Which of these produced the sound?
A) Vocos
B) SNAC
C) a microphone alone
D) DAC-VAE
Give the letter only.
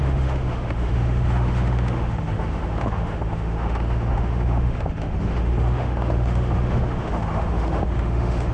D